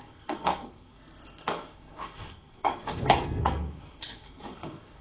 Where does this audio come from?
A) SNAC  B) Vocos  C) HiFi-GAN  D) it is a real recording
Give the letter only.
A